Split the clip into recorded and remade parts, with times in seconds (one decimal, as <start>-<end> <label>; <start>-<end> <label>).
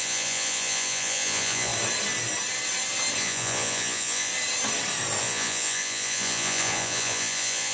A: 0.0-1.7 remade; 1.7-3.2 recorded; 3.2-4.3 remade; 4.3-5.2 recorded; 5.2-7.7 remade